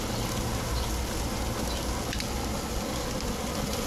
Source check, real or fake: real